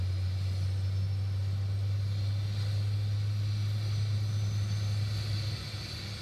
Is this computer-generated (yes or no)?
no